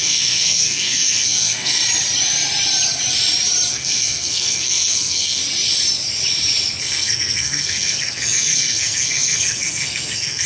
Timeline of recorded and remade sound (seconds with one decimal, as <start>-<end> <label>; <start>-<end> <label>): 0.0-1.8 remade; 1.8-3.7 recorded; 3.7-5.4 remade; 5.4-6.8 recorded; 6.8-10.5 remade

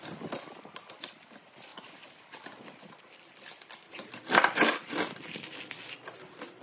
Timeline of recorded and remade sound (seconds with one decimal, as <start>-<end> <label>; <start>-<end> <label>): 0.0-6.6 recorded